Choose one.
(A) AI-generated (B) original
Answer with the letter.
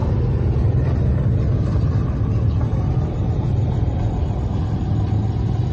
B